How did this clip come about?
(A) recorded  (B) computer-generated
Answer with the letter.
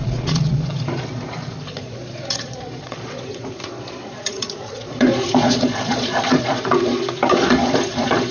B